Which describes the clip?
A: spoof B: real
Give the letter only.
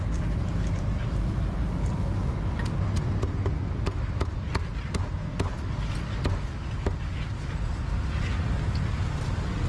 B